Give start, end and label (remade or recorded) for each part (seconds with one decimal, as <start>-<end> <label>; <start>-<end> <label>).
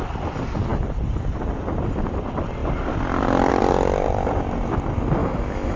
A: 0.0-5.2 recorded; 5.2-5.8 remade